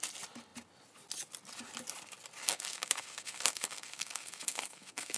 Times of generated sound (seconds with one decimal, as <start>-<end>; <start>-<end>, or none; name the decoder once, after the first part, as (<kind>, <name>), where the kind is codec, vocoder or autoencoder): 2.4-5.2 (codec, SNAC)